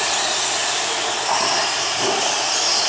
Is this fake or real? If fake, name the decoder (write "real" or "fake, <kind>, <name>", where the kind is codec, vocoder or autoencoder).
real